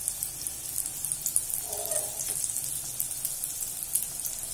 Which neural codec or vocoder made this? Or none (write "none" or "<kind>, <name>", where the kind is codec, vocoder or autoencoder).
none